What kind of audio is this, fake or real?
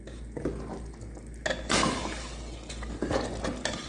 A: real